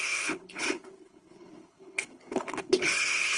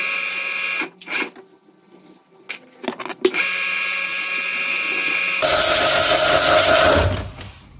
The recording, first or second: second